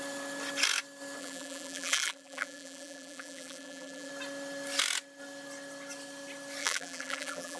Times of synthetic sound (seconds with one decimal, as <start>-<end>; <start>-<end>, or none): 1.2-4.1; 6.6-7.6